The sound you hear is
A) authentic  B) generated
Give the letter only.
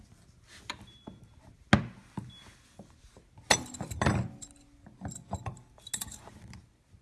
A